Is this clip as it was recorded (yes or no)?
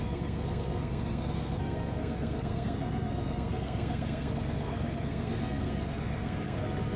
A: no